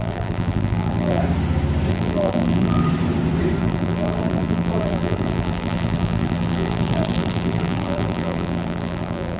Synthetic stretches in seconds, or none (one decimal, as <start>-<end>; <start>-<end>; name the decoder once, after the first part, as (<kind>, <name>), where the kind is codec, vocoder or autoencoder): 0.0-1.2 (vocoder, BigVGAN v2); 1.9-2.8; 3.6-9.4